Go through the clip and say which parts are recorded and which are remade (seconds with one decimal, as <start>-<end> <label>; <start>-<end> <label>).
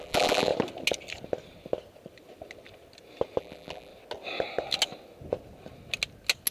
0.0-0.5 remade; 0.5-3.4 recorded; 3.4-3.9 remade; 3.9-6.5 recorded